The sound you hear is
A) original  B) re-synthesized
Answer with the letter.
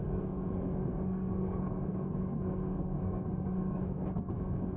B